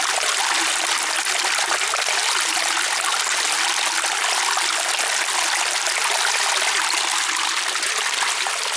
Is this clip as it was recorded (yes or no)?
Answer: yes